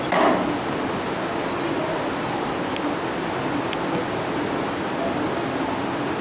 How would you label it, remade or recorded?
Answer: recorded